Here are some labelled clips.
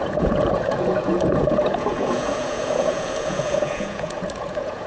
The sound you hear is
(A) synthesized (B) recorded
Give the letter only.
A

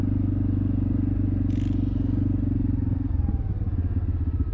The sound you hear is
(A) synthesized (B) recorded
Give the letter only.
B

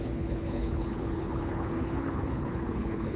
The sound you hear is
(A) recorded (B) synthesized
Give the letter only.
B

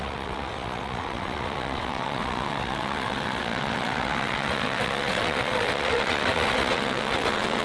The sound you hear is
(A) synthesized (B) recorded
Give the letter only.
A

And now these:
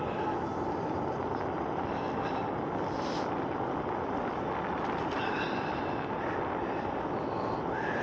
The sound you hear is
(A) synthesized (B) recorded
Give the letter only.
B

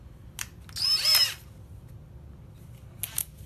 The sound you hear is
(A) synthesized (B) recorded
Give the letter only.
B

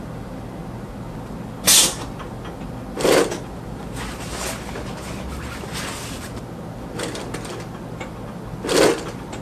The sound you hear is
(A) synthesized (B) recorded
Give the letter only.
B